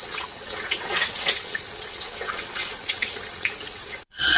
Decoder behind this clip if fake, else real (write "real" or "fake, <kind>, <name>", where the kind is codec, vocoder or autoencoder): fake, vocoder, WaveNeXt